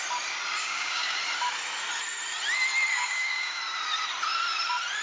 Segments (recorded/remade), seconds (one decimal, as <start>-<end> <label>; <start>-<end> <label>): 0.0-0.6 recorded; 0.6-1.1 remade; 1.1-2.9 recorded; 2.9-3.6 remade; 3.6-5.0 recorded